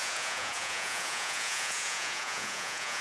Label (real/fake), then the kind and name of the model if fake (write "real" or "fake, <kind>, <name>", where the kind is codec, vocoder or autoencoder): fake, vocoder, Vocos